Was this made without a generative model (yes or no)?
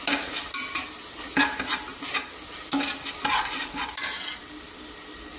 yes